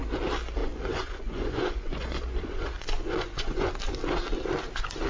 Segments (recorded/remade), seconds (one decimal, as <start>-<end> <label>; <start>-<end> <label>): 0.0-0.6 recorded; 0.6-3.7 remade; 3.7-5.1 recorded